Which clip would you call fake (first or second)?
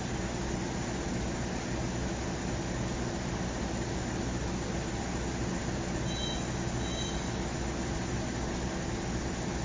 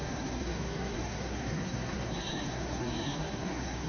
second